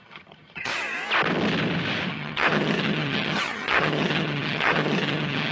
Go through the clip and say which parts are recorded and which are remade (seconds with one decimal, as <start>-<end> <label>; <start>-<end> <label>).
0.0-0.7 remade; 0.7-2.1 recorded; 2.1-5.5 remade